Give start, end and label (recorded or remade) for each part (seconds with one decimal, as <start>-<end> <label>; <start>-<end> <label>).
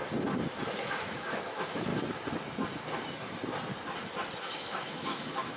0.0-0.8 recorded; 0.8-1.9 remade; 1.9-4.4 recorded; 4.4-5.6 remade